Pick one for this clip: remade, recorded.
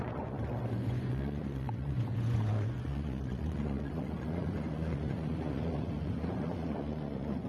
remade